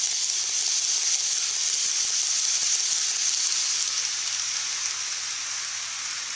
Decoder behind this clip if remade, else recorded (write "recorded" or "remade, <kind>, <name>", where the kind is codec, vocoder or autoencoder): recorded